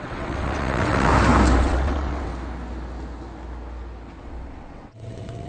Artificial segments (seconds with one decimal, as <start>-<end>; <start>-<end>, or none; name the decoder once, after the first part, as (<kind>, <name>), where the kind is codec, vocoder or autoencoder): 0.0-1.1 (vocoder, WaveNeXt); 1.6-2.3; 4.2-5.5

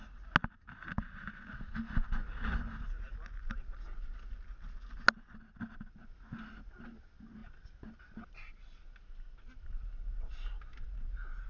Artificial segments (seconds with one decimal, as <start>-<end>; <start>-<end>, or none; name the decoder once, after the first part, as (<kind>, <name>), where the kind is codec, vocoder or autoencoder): none

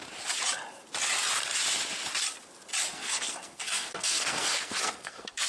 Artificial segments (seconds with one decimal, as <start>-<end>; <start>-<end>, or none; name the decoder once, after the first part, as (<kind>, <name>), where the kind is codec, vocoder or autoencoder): 2.9-5.5 (codec, SNAC)